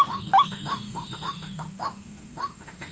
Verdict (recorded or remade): remade